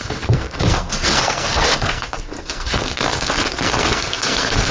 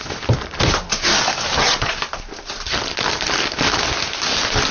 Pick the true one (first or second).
second